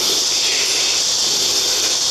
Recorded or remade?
recorded